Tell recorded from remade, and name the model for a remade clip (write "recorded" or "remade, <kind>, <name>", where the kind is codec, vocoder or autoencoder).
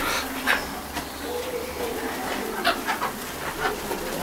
recorded